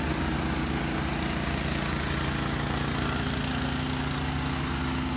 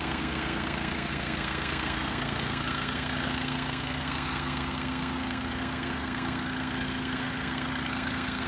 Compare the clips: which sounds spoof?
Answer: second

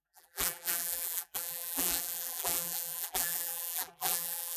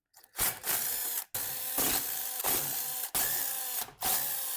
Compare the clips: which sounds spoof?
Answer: first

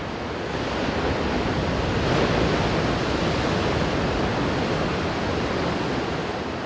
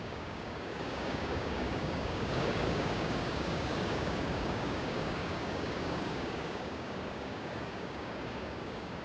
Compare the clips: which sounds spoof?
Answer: second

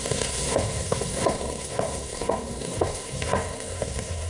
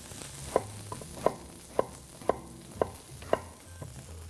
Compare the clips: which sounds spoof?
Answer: first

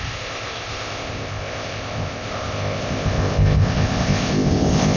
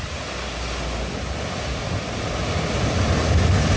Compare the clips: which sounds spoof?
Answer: first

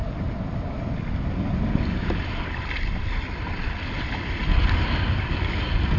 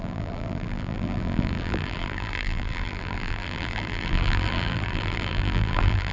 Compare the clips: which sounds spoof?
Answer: second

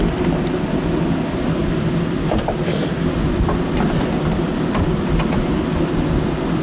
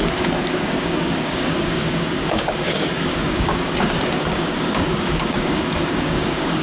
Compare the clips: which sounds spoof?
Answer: second